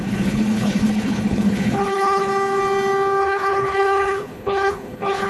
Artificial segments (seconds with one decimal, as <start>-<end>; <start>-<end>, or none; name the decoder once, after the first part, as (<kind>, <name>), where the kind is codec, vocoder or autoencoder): 0.0-2.3 (codec, HILCodec); 3.2-5.3